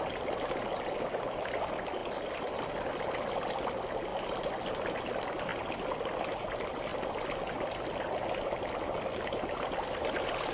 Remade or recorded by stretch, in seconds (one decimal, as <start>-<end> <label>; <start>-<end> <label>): 0.0-10.5 recorded